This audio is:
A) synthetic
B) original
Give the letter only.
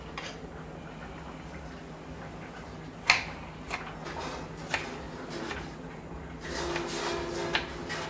B